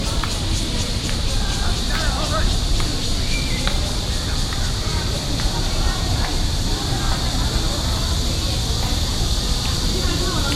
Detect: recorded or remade remade